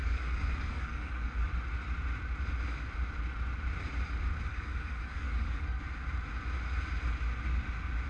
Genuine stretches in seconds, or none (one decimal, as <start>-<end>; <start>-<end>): 1.5-4.5; 5.8-8.1